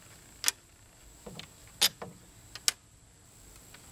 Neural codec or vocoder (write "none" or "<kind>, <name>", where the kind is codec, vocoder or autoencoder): none